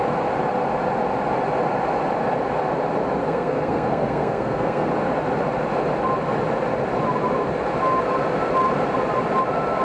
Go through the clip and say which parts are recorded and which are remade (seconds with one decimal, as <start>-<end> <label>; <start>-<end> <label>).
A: 0.0-3.2 recorded; 3.2-4.9 remade; 4.9-9.8 recorded